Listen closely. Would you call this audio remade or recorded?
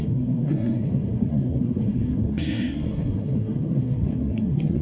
remade